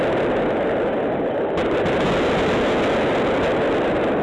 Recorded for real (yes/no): yes